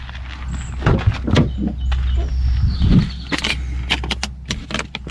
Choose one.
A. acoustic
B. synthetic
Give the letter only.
A